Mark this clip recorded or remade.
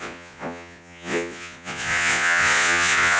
remade